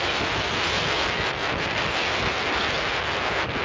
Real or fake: real